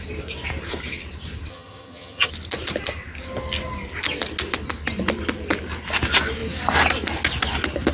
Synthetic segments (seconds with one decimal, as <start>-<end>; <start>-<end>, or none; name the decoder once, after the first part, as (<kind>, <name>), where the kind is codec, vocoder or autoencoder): 1.5-2.3 (vocoder, HiFi-GAN)